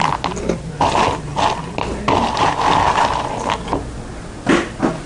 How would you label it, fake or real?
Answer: real